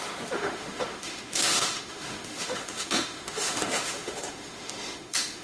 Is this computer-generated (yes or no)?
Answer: yes